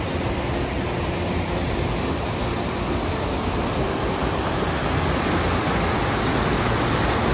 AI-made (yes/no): no